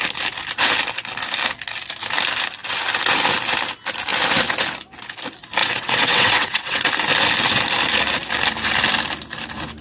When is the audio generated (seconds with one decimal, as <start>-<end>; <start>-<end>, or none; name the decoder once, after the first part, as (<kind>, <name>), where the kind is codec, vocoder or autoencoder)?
5.6-6.9 (vocoder, WaveNeXt)